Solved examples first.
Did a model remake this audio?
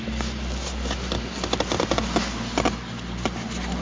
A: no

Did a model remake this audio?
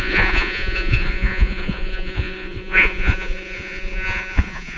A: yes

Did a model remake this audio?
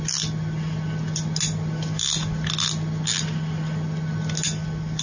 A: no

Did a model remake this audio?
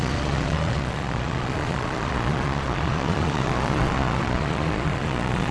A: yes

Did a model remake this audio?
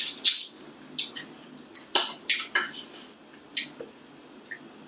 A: no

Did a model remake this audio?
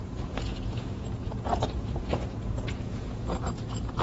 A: yes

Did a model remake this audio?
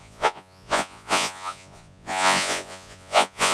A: yes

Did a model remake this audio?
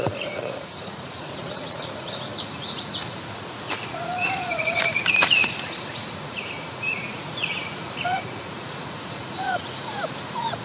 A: yes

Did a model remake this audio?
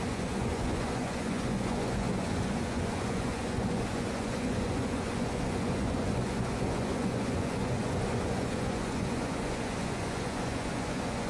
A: yes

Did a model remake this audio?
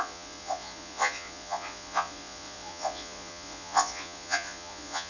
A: yes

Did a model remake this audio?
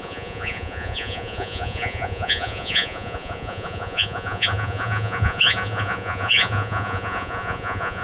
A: yes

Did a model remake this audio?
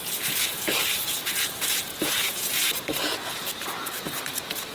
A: yes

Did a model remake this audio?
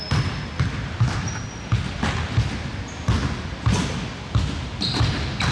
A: no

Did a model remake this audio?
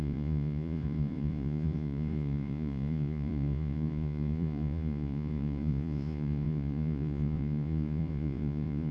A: yes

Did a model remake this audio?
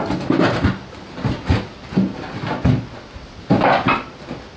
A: no